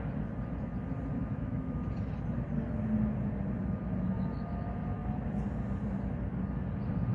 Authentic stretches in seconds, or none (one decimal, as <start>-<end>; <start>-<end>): 0.0-1.2; 1.8-7.1